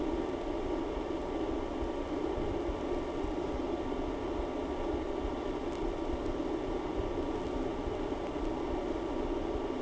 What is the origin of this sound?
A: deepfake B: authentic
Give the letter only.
B